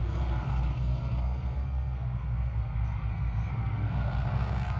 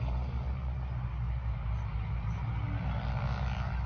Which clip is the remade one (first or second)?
first